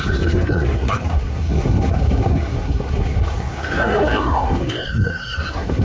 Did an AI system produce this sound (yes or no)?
yes